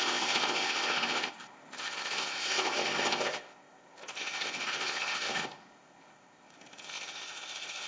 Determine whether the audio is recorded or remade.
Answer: remade